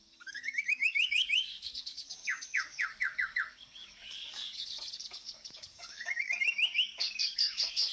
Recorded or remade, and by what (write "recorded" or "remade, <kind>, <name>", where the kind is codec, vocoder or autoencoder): remade, codec, DAC